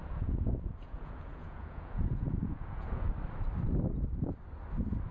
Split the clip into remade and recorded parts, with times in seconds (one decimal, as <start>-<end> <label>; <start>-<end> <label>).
0.0-3.1 remade; 3.1-5.1 recorded